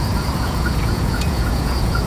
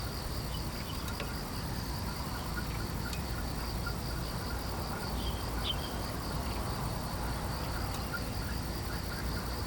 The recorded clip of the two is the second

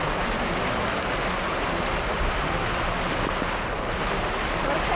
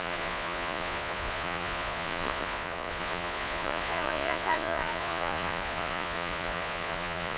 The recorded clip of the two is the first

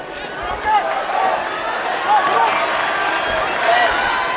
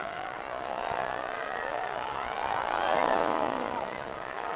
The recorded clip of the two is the first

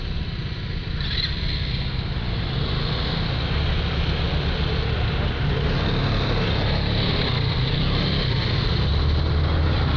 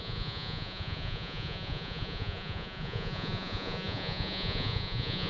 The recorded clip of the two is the first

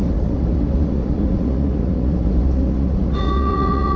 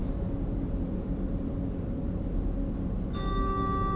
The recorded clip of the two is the second